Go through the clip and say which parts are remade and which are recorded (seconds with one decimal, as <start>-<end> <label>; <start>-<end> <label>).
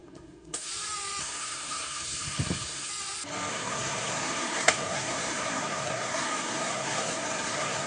0.0-0.7 remade; 0.7-1.2 recorded; 1.2-2.9 remade; 2.9-3.5 recorded; 3.5-7.9 remade